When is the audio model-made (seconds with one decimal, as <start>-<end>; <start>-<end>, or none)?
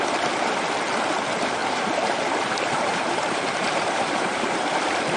1.6-4.7